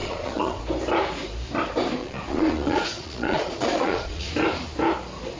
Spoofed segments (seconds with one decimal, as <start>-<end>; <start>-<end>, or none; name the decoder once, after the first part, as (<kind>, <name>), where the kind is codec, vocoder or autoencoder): 0.0-0.6 (vocoder, Vocos); 2.0-4.3